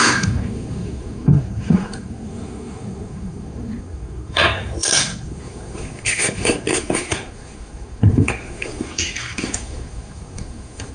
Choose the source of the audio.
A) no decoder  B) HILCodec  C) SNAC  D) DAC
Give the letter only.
C